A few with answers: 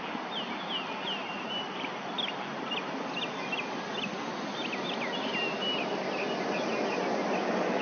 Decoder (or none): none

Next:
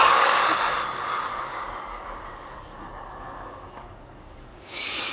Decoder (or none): codec, DAC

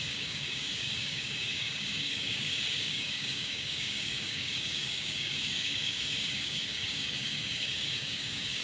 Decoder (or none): codec, DAC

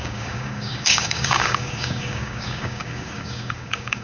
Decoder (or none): codec, DAC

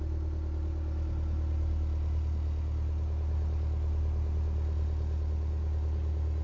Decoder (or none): none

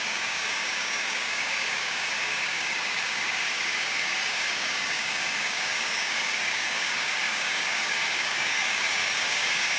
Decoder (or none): codec, DAC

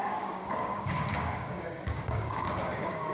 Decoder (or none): codec, DAC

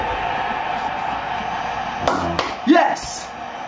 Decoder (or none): none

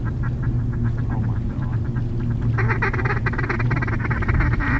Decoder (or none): none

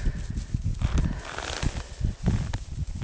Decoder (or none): none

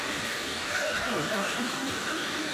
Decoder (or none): codec, DAC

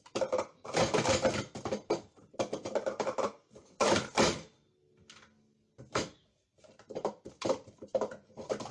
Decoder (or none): none